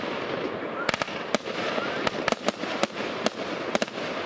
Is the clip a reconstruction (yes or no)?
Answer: no